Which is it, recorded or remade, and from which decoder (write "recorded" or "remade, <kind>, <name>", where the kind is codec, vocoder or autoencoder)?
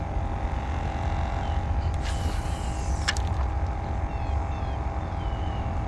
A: recorded